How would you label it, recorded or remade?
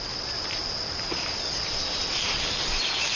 recorded